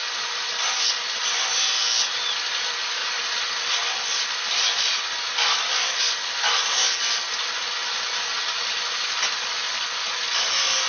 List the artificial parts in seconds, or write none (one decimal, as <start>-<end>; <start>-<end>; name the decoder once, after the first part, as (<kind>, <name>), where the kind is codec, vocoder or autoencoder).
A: none